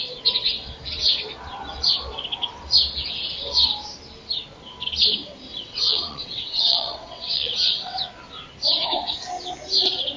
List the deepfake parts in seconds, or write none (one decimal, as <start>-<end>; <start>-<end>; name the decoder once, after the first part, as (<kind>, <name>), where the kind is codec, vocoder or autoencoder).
5.5-8.0 (vocoder, WaveNeXt)